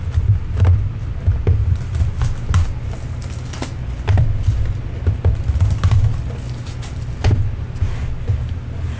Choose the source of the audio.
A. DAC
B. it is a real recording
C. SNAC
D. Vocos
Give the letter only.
B